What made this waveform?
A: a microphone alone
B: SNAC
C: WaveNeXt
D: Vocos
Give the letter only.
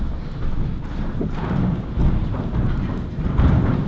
A